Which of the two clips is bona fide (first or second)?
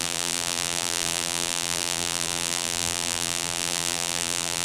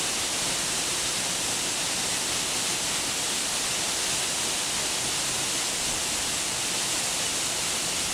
second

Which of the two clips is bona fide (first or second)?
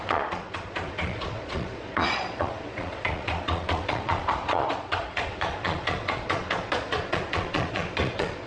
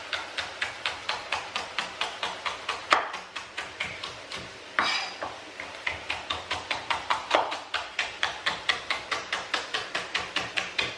second